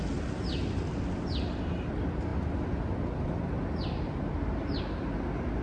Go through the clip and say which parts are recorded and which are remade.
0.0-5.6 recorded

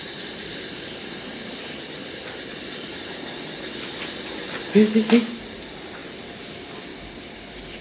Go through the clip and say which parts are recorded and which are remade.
0.0-1.5 remade; 1.5-5.6 recorded; 5.6-6.9 remade; 6.9-7.8 recorded